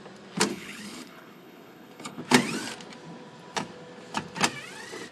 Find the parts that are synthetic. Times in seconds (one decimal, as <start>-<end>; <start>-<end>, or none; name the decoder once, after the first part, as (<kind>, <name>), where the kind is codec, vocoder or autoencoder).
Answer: 0.5-2.2 (codec, HILCodec)